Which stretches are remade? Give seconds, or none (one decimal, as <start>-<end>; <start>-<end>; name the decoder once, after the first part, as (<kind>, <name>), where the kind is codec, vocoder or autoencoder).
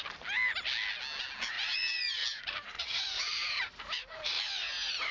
2.3-4.2 (vocoder, BigVGAN v2)